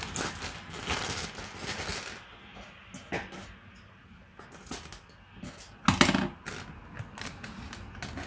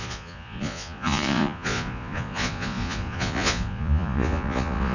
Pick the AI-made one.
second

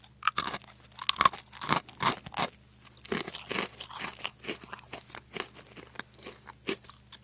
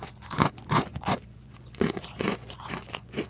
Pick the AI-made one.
second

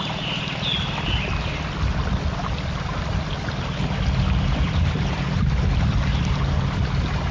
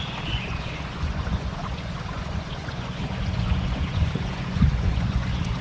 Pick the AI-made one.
second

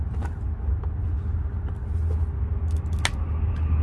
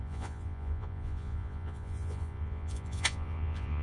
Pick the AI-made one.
second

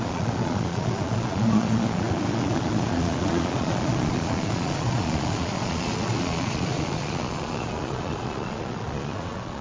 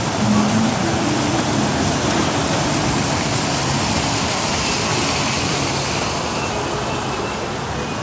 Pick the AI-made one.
first